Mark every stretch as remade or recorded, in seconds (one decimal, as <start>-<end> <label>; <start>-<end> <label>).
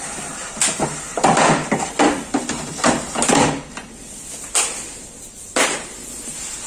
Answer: 0.0-1.1 recorded; 1.1-1.8 remade; 1.8-6.7 recorded